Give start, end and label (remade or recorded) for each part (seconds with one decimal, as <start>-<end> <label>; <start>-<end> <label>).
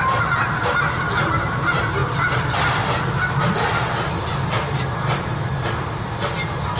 0.0-6.8 recorded